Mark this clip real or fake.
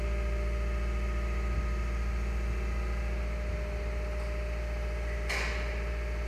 real